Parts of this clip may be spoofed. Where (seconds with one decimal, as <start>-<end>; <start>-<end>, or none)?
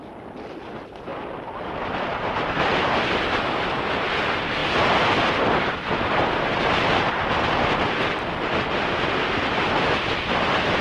none